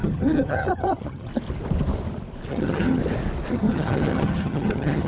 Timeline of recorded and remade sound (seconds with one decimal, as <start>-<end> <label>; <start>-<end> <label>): 0.0-1.3 remade; 1.3-2.5 recorded; 2.5-3.0 remade; 3.0-3.5 recorded; 3.5-5.1 remade